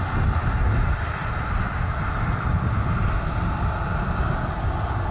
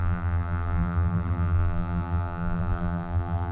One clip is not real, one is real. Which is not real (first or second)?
second